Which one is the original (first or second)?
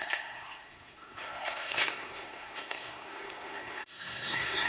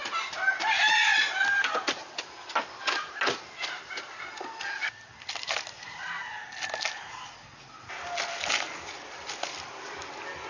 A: second